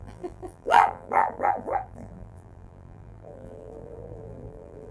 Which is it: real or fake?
fake